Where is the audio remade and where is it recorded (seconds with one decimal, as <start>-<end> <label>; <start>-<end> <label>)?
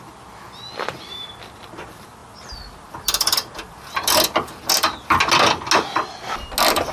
0.0-6.9 recorded